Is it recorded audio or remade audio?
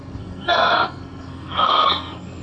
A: remade